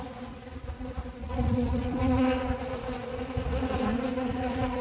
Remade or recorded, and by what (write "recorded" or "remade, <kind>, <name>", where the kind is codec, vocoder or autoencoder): remade, vocoder, Vocos